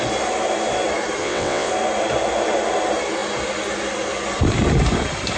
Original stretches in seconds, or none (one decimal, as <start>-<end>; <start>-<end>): 0.0-1.2; 1.7-5.4